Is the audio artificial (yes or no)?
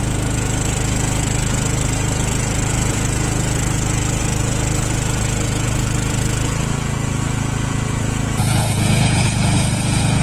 yes